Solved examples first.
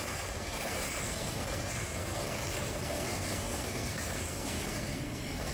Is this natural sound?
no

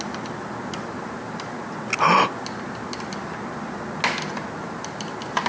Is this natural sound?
yes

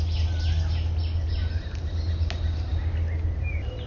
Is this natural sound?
yes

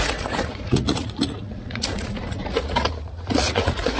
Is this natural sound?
no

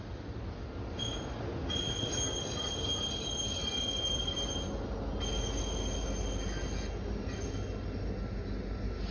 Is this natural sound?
yes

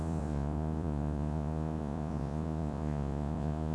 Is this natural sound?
no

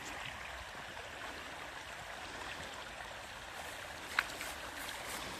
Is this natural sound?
yes